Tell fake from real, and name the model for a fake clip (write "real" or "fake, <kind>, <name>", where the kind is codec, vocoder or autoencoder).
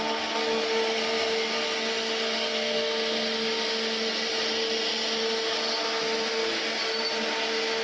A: real